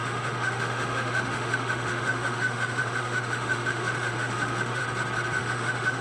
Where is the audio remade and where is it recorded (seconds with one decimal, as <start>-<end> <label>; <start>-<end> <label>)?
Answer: 0.0-4.8 remade; 4.8-5.4 recorded; 5.4-6.0 remade